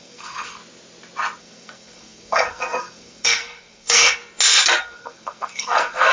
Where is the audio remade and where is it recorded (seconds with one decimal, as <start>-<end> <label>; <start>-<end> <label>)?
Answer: 0.0-0.6 remade; 0.6-1.4 recorded; 1.4-4.2 remade; 4.2-4.8 recorded; 4.8-6.1 remade